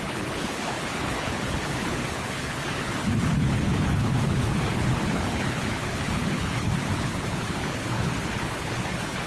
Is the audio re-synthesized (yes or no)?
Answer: yes